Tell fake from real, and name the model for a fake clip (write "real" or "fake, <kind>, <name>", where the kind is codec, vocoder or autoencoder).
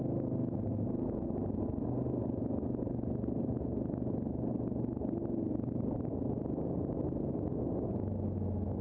real